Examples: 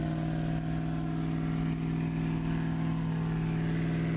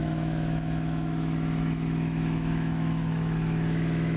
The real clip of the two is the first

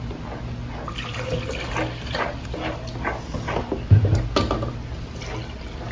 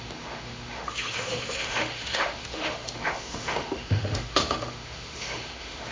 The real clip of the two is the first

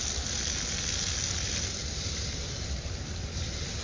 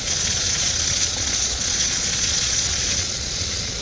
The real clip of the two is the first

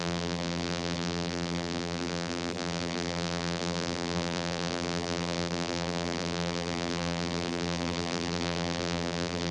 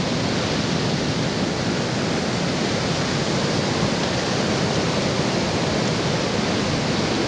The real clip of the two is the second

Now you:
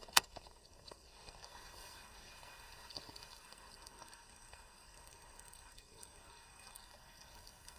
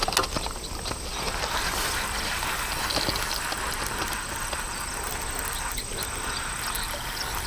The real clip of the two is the second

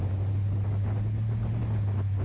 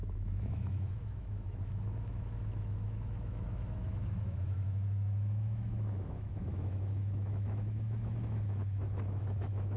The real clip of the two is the first